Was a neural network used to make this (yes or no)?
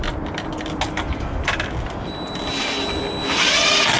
no